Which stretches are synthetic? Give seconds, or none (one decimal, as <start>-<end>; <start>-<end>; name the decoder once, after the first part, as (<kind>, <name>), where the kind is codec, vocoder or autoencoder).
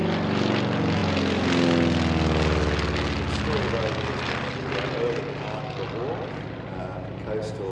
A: none